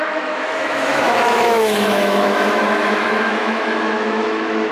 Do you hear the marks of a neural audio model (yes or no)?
yes